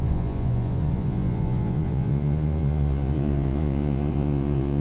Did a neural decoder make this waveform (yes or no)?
yes